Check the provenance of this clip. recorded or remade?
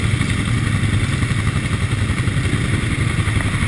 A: recorded